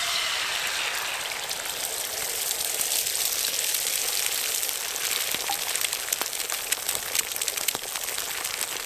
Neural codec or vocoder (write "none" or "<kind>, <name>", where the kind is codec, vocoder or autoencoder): vocoder, BigVGAN v2